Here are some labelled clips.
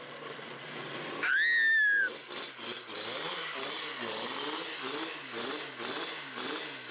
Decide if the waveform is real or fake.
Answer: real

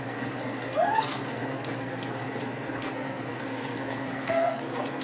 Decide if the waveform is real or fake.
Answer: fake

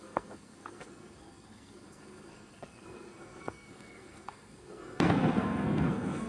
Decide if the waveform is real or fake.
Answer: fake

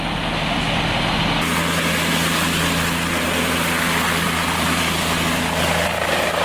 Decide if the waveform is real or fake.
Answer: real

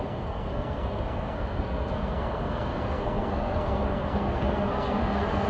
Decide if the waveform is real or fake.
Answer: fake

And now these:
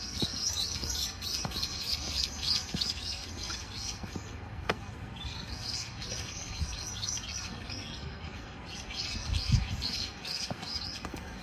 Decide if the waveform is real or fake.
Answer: fake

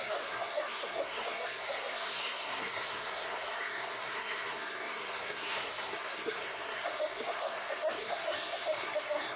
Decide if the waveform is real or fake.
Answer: fake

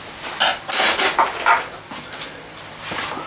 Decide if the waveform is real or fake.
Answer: real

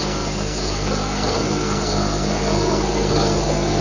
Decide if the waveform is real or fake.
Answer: fake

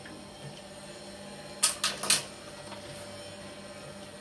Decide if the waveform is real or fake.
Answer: real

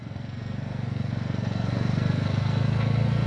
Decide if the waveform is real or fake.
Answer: fake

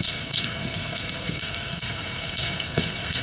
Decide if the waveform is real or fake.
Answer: fake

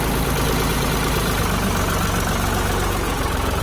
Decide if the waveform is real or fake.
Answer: real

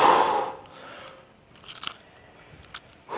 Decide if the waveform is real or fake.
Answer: real